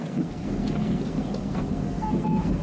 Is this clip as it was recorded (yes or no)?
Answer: no